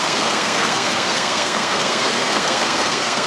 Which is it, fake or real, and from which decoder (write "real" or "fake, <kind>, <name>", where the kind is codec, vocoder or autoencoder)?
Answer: fake, codec, SNAC